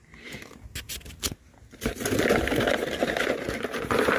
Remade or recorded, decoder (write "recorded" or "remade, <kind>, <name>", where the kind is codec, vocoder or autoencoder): recorded